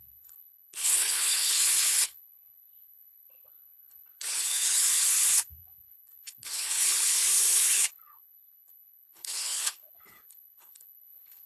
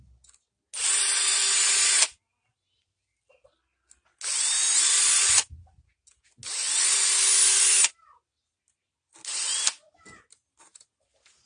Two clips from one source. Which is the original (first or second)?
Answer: second